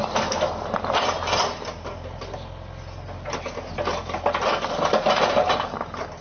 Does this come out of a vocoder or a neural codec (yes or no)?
no